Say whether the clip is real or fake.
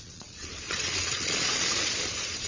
fake